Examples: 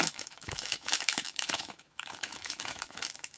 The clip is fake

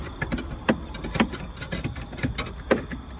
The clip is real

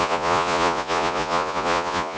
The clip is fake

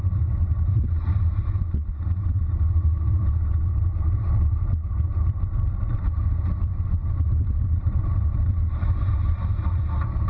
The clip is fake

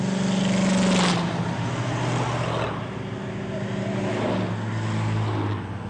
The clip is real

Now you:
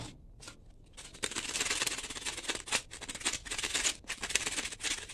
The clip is real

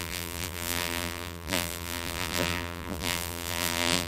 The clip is fake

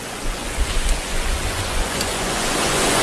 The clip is fake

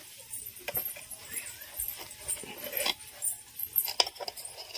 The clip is real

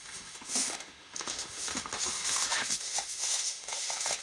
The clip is fake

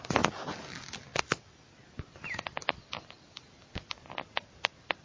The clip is real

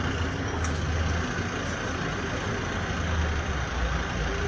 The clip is real